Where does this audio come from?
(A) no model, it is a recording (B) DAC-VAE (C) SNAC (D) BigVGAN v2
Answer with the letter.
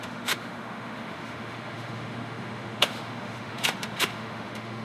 B